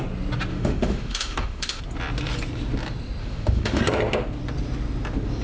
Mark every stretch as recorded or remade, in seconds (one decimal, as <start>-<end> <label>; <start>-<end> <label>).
0.0-0.5 recorded; 0.5-1.8 remade; 1.8-3.2 recorded; 3.2-3.8 remade; 3.8-5.4 recorded